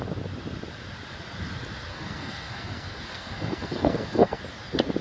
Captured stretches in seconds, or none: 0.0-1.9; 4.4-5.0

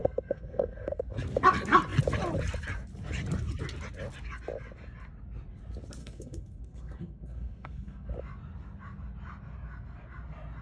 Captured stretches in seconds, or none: 1.0-6.0; 8.1-10.6

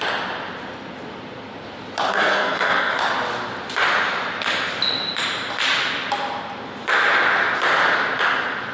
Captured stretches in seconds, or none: 0.0-2.1; 2.9-8.7

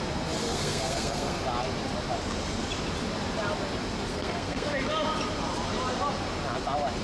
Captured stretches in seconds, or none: 0.0-0.4; 1.4-4.1; 4.7-7.0

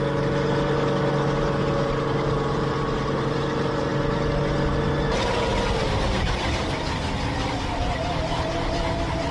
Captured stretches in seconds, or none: 0.0-9.3

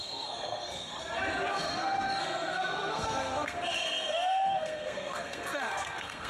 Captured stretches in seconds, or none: 0.9-1.5

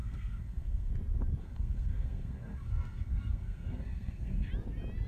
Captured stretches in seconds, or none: 0.9-1.4; 4.5-5.1